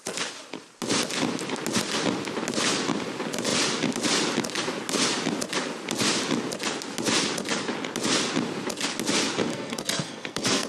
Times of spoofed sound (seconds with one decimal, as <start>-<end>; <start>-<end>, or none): 9.5-10.7